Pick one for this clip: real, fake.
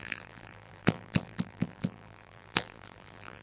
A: fake